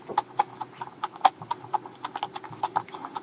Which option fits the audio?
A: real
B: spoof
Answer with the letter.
A